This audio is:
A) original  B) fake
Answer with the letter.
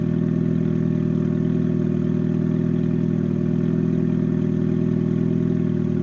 A